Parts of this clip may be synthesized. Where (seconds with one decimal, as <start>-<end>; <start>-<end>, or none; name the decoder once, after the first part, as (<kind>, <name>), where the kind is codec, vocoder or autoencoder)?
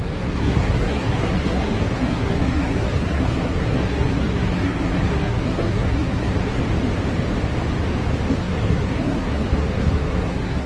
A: 0.0-6.6 (codec, SNAC); 8.3-10.7